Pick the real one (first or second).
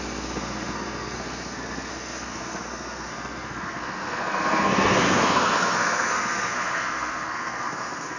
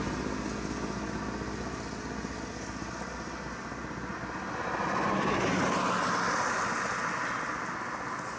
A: second